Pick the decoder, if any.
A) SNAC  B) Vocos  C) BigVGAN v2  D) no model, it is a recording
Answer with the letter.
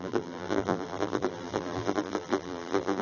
C